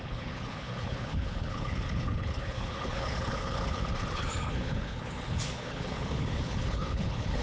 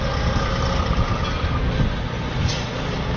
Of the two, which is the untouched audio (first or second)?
second